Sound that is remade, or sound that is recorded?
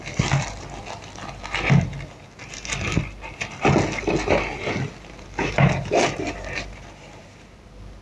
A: recorded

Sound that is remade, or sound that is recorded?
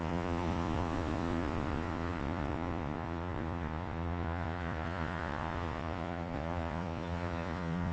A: remade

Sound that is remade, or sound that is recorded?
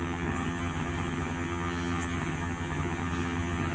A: remade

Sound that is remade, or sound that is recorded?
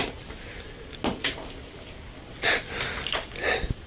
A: recorded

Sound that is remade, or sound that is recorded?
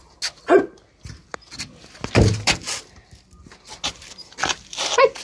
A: recorded